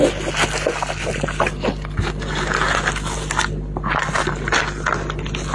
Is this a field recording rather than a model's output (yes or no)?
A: yes